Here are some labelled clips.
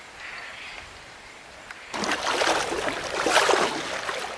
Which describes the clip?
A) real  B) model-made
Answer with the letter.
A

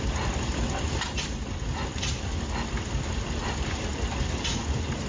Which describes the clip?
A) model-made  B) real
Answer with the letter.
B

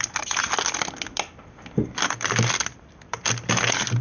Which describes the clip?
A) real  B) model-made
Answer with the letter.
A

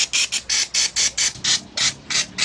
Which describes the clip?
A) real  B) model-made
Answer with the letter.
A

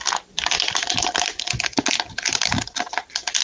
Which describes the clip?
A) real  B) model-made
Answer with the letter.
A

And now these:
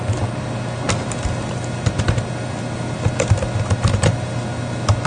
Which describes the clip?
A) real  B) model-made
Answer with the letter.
A